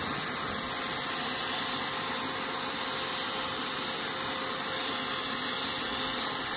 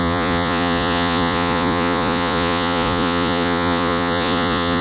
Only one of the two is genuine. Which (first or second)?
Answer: first